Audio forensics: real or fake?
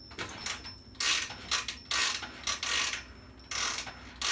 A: real